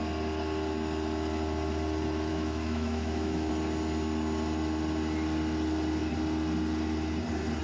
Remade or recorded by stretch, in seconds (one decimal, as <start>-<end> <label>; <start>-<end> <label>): 0.0-2.3 recorded; 2.3-3.5 remade; 3.5-7.6 recorded